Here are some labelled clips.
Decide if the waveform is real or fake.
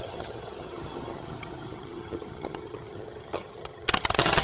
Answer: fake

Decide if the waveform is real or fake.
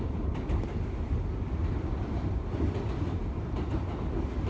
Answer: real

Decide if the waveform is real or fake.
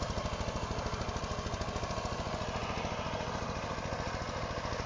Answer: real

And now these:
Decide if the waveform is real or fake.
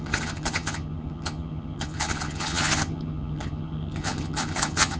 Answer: fake